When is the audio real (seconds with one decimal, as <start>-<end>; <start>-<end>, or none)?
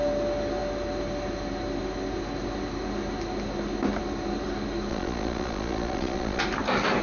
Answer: 0.0-4.9; 6.4-7.0